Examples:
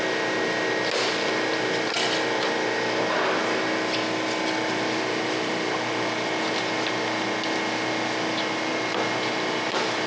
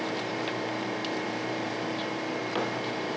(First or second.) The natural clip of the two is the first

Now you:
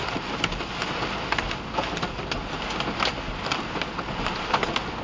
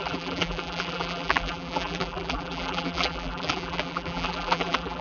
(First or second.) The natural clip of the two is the first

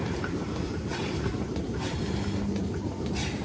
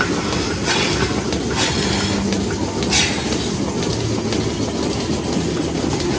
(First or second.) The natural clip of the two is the second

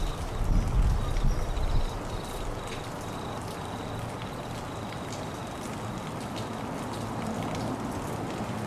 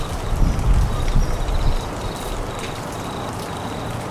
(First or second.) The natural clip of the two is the first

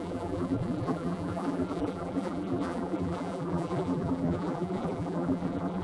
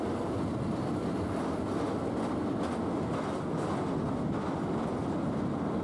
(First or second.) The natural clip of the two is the second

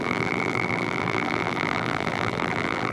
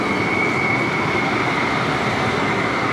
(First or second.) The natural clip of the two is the second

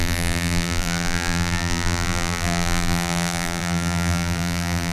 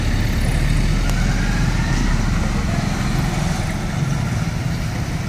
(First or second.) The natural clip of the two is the second